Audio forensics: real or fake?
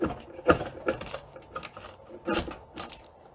real